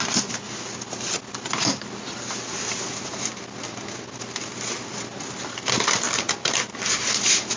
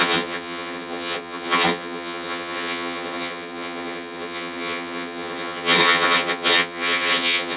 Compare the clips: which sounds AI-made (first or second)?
second